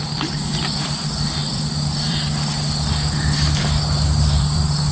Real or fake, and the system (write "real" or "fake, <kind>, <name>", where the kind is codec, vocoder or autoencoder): fake, vocoder, BigVGAN v2